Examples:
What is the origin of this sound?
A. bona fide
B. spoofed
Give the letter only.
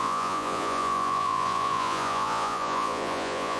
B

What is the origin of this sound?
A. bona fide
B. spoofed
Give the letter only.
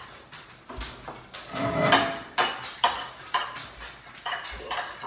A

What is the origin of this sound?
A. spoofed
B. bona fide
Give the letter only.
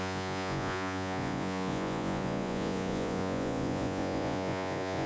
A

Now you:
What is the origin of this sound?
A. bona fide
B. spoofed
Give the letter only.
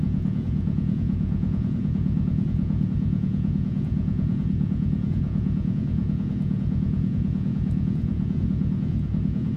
B